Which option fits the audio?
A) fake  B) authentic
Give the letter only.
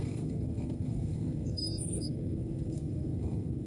A